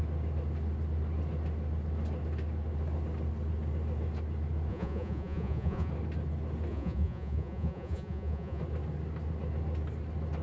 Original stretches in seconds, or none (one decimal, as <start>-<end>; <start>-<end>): 0.0-4.7; 5.9-6.7; 8.6-10.4